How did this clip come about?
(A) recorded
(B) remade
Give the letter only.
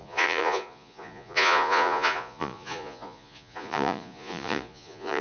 B